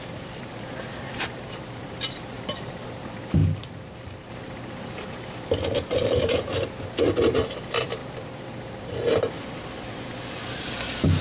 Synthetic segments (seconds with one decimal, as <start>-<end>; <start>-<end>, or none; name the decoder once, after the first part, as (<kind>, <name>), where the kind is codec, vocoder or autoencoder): 0.0-3.4 (vocoder, BigVGAN v2); 4.3-11.2